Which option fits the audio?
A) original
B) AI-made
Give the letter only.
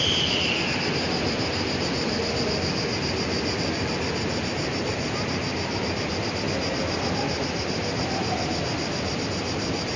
A